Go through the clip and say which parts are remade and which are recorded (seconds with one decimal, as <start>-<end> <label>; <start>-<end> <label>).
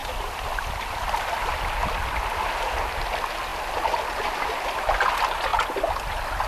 0.0-1.2 remade; 1.2-1.8 recorded; 1.8-2.9 remade; 2.9-5.5 recorded; 5.5-6.1 remade; 6.1-6.5 recorded